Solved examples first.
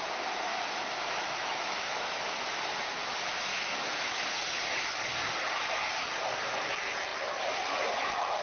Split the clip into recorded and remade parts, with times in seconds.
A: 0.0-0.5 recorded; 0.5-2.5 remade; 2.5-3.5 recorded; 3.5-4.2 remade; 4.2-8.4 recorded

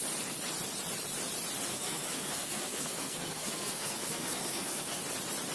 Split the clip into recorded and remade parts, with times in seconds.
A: 0.0-1.7 recorded; 1.7-5.0 remade; 5.0-5.5 recorded